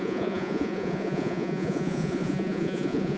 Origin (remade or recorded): remade